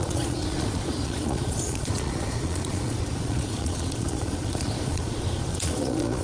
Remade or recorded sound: remade